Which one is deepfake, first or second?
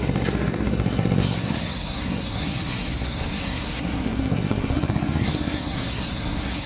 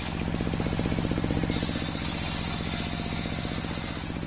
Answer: first